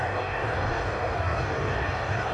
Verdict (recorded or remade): remade